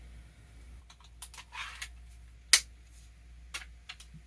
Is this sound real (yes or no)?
yes